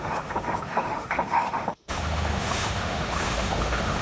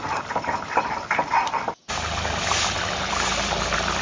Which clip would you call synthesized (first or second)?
first